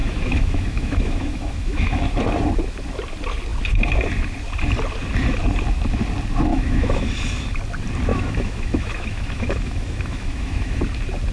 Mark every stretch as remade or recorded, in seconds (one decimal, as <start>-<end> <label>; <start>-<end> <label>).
0.0-2.0 remade; 2.0-6.5 recorded; 6.5-7.1 remade; 7.1-8.1 recorded; 8.1-10.8 remade; 10.8-11.3 recorded